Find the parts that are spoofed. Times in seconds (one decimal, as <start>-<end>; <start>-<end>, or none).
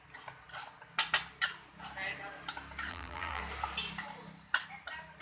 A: 2.9-3.4